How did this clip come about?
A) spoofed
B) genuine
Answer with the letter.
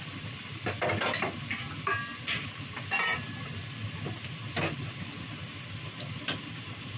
B